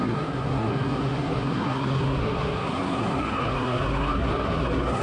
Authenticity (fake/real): fake